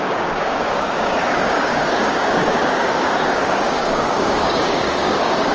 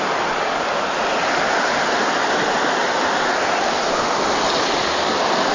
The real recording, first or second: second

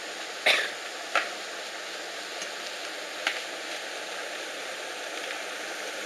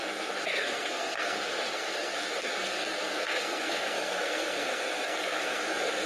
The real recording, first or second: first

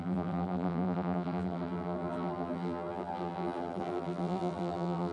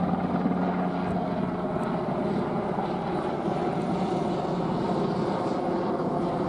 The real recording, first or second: second